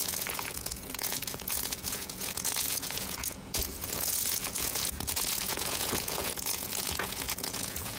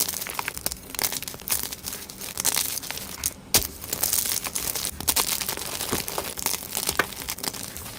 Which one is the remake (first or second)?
first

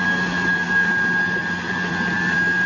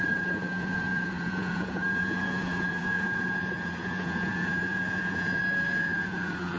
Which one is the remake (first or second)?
second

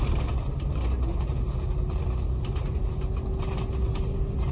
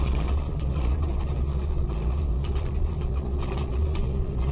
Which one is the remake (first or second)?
second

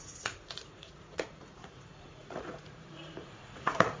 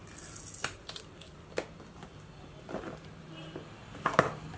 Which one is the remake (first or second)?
first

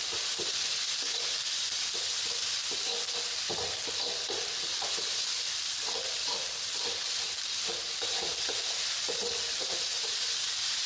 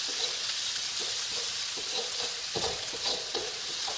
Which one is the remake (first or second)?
second